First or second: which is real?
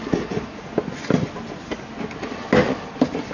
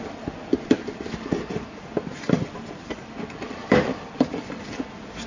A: first